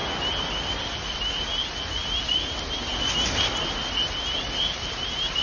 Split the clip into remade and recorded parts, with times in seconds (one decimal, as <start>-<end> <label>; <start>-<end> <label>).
0.0-5.4 recorded